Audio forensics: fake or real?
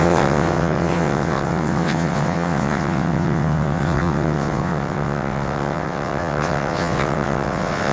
fake